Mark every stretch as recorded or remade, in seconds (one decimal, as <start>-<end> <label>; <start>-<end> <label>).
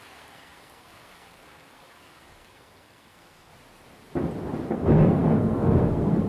0.0-3.5 remade; 3.5-4.7 recorded; 4.7-6.3 remade